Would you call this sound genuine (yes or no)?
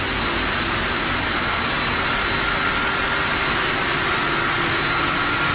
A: yes